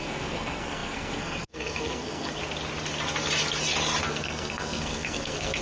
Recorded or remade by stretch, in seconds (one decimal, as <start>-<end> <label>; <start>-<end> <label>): 0.0-2.4 remade; 2.4-4.1 recorded; 4.1-5.6 remade

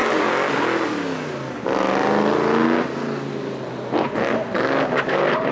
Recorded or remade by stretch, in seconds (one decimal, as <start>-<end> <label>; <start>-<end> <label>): 0.0-5.5 recorded

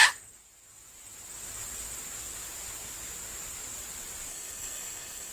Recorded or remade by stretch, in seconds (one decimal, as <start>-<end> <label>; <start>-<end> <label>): 0.0-4.3 recorded; 4.3-5.3 remade

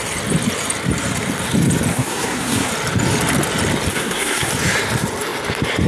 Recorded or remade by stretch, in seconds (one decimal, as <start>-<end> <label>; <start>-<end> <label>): 0.0-1.9 recorded; 1.9-2.7 remade; 2.7-3.9 recorded; 3.9-4.5 remade; 4.5-5.9 recorded

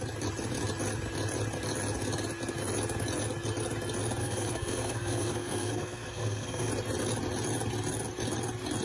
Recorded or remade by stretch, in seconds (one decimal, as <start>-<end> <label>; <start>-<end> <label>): 0.0-4.2 recorded; 4.2-6.7 remade; 6.7-8.8 recorded

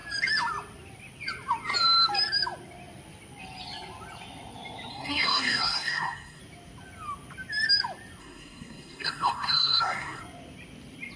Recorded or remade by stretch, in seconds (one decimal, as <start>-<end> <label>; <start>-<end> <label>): 0.0-4.9 recorded; 4.9-6.4 remade; 6.4-8.2 recorded; 8.2-10.2 remade; 10.2-11.2 recorded